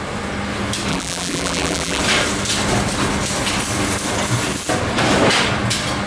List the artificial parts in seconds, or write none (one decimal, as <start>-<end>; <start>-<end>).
0.9-2.0